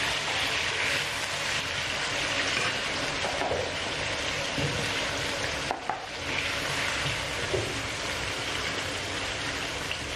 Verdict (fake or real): fake